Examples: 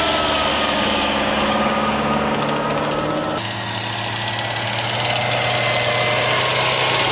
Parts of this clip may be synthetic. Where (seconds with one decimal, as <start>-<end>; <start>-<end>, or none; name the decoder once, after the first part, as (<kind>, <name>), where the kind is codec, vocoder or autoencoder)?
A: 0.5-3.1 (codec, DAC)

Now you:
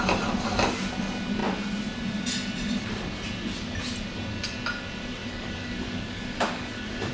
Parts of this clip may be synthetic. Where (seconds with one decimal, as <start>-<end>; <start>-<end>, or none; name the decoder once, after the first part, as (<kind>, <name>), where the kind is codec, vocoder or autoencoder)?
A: 5.2-7.1 (codec, DAC)

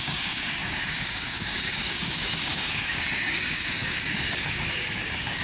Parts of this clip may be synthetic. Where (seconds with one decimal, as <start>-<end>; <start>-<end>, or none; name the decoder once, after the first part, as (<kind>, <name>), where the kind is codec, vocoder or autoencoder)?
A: 0.0-5.4 (codec, DAC)

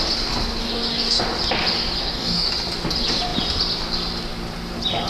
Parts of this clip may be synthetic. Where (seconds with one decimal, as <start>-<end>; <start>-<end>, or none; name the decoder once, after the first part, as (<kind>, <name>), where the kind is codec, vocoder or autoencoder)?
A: 0.6-1.2 (codec, DAC); 2.0-2.5